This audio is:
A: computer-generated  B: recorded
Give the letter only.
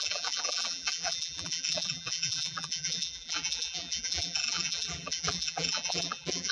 A